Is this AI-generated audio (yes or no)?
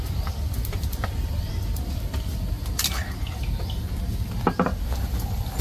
no